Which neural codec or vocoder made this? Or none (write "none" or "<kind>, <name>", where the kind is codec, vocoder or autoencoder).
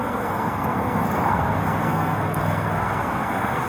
codec, SNAC